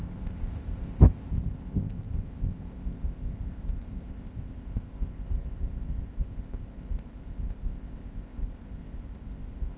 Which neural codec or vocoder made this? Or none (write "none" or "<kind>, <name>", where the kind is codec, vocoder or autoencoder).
codec, ZipCodec